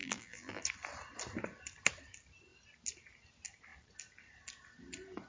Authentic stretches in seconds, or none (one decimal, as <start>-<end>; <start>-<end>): 0.6-5.3

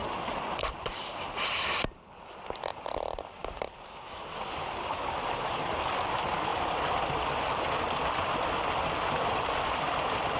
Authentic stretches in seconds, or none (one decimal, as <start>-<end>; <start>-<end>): 0.0-6.5; 8.5-10.4

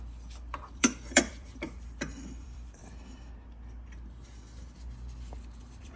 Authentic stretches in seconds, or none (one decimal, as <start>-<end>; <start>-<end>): 2.8-5.6

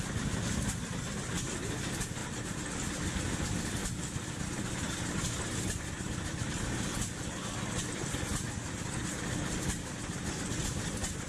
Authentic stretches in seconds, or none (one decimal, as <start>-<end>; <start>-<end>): 0.0-2.2; 2.9-11.3

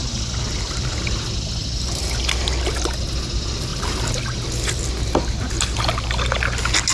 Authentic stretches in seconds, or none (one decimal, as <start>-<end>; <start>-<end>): 0.0-1.6; 2.2-6.9

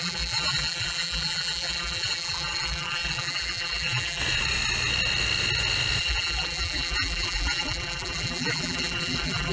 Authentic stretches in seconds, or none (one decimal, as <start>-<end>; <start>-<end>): 4.2-6.0

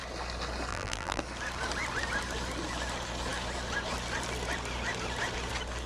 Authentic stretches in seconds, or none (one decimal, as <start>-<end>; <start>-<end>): 0.0-0.7; 1.2-5.9

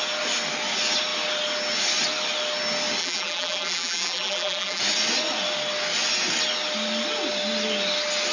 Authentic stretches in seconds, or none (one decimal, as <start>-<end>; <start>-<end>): 0.0-3.0; 4.8-8.3